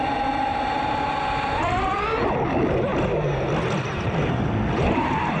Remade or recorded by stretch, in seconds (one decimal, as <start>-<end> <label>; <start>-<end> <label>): 0.0-0.5 recorded; 0.5-1.1 remade; 1.1-5.4 recorded